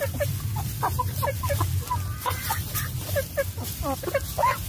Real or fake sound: fake